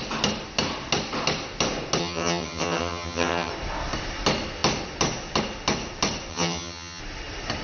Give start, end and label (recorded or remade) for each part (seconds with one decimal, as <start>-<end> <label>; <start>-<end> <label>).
0.0-2.0 recorded; 2.0-3.5 remade; 3.5-6.3 recorded; 6.3-7.0 remade; 7.0-7.6 recorded